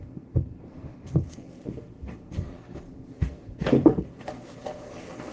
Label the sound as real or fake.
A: fake